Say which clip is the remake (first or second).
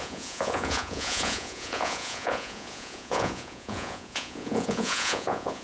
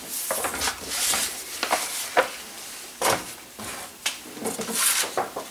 first